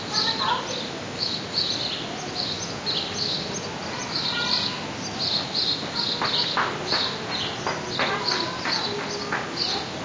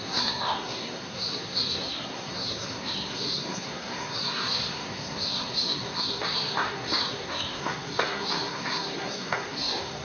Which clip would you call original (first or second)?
first